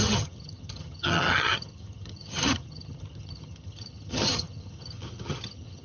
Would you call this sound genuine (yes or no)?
no